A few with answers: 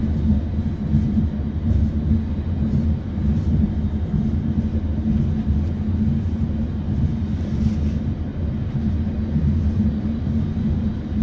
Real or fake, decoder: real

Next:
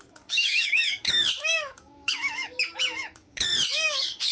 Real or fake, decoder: fake, codec, DAC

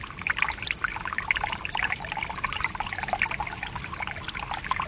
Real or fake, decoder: real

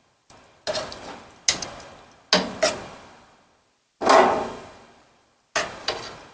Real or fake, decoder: real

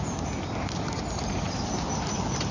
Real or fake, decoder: real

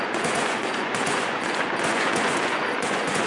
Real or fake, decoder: fake, vocoder, Vocos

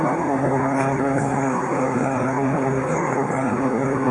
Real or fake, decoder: fake, codec, SNAC